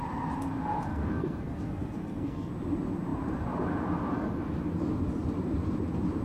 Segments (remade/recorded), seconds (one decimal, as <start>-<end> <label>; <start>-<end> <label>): 0.0-0.9 recorded; 0.9-2.5 remade; 2.5-6.2 recorded